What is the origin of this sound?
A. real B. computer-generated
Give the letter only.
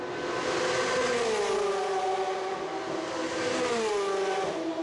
A